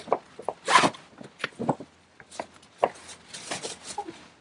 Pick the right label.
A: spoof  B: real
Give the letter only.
B